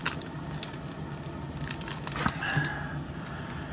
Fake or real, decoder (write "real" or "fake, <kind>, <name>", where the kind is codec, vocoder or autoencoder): real